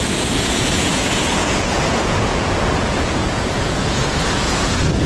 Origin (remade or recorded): remade